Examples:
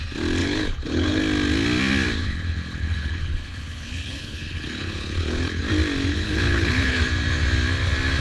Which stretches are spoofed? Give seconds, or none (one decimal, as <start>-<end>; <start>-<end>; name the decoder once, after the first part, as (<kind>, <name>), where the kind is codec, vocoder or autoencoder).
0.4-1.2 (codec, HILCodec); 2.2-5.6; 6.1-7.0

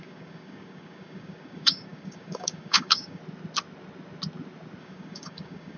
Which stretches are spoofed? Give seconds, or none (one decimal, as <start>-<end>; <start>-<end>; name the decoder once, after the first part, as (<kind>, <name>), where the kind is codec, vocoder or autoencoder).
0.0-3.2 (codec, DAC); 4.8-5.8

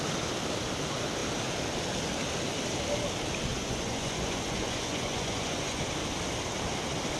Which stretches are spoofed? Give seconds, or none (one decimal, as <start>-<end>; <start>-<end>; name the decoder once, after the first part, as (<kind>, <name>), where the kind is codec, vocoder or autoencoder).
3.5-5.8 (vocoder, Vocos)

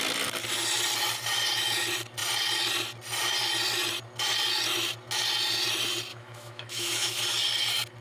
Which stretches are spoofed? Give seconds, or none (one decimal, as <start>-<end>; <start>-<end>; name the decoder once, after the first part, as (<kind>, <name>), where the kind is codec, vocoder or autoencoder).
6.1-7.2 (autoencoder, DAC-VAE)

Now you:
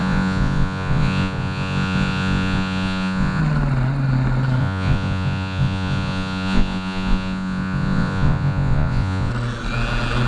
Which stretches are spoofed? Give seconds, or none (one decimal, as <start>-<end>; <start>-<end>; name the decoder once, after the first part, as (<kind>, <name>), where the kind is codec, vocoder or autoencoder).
0.0-3.4 (vocoder, Vocos); 4.6-9.3

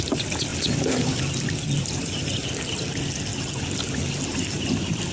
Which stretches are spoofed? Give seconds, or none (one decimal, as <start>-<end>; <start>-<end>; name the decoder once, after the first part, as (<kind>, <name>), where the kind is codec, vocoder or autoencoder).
0.5-1.2 (vocoder, BigVGAN v2)

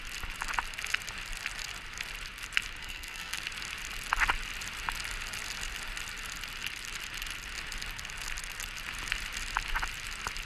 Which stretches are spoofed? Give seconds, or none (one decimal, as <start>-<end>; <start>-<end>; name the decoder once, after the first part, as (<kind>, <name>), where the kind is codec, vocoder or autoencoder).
2.8-3.4 (codec, SNAC)